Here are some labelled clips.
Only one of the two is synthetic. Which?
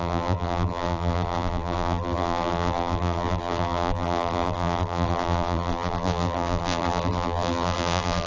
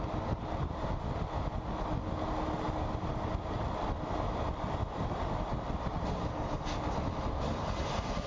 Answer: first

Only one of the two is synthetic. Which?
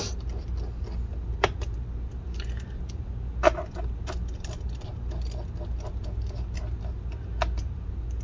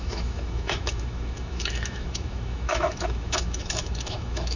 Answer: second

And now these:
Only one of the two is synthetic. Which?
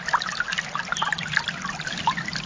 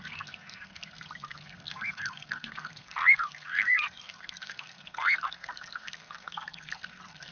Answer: second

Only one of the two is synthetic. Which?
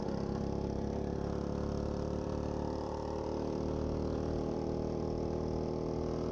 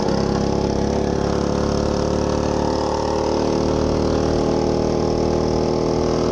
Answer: first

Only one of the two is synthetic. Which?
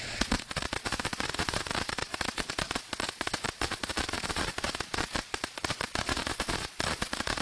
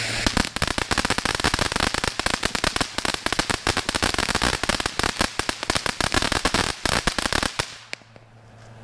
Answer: first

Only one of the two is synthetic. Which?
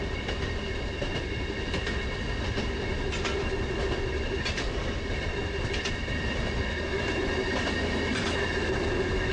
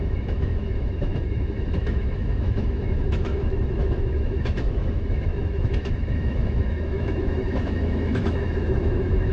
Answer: second